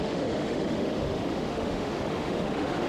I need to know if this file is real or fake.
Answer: fake